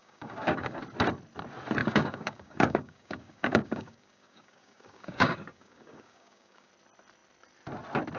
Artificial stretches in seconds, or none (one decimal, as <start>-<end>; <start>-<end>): 0.0-0.8; 1.8-6.7